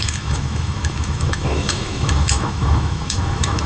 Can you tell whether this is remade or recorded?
remade